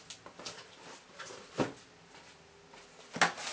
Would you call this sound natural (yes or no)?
yes